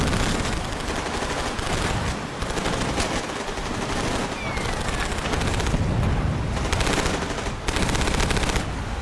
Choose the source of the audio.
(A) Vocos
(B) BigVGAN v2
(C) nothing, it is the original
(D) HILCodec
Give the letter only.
C